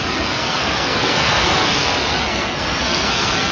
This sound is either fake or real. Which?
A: fake